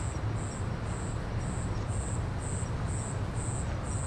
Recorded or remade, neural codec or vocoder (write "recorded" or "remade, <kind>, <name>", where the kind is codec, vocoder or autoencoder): recorded